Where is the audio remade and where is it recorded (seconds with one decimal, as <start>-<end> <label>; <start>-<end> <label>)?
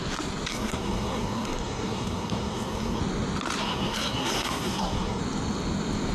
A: 0.0-0.5 recorded; 0.5-3.0 remade; 3.0-3.6 recorded; 3.6-5.2 remade; 5.2-6.1 recorded